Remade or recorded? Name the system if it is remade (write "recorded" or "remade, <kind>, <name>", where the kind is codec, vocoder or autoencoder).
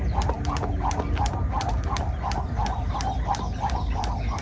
recorded